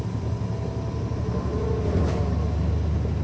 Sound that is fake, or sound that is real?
real